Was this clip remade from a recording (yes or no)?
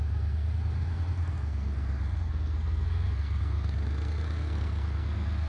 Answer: yes